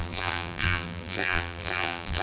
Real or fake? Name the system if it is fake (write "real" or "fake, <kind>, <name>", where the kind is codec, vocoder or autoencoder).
fake, vocoder, BigVGAN v2